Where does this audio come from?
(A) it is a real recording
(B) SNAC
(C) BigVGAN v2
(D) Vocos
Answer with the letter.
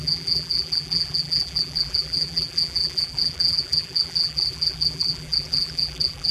C